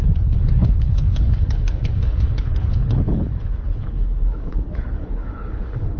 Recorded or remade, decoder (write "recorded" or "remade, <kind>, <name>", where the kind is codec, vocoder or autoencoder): remade, codec, HILCodec